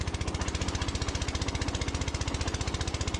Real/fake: real